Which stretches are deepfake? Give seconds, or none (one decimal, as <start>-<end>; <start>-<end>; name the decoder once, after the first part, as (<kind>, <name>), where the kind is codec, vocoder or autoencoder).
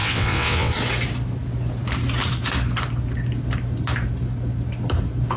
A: 0.0-0.7 (vocoder, WaveNeXt)